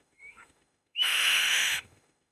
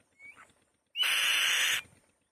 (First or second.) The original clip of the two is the second